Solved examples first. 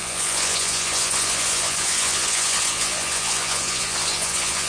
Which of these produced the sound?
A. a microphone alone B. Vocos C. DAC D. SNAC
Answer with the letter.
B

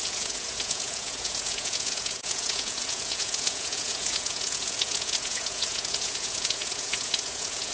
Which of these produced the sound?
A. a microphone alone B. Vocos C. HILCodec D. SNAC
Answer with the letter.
B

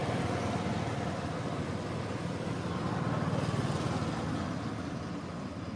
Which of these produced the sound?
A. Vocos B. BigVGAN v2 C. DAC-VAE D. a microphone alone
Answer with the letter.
D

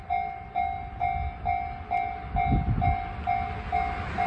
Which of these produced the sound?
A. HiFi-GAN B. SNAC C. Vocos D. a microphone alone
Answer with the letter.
D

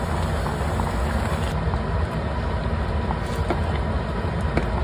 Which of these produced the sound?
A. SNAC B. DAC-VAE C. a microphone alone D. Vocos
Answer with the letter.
C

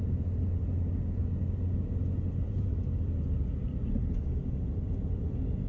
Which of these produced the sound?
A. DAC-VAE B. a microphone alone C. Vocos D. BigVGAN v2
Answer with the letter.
B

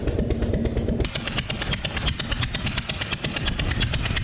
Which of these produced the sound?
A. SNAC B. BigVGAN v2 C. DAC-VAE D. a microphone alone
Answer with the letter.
D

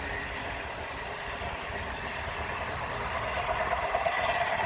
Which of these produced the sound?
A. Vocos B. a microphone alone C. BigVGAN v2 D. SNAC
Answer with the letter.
B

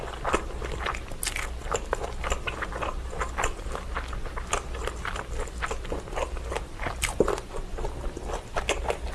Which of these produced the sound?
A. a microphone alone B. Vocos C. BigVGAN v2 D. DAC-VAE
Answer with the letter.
A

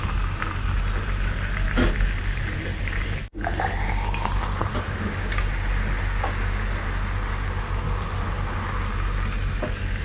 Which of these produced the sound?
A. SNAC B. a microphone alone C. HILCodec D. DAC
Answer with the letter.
B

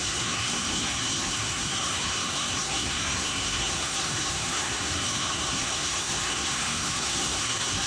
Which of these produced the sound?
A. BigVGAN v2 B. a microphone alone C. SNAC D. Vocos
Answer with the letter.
C